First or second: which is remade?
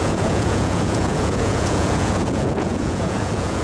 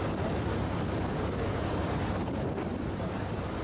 first